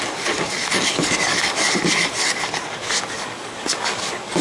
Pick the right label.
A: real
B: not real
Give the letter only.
B